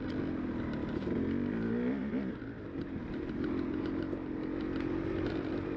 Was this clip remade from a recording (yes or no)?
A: no